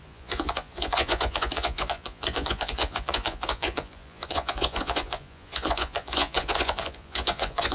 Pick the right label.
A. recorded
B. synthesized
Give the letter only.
B